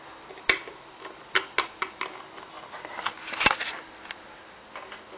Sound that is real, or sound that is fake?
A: real